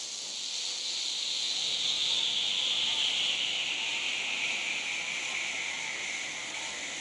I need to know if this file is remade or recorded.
recorded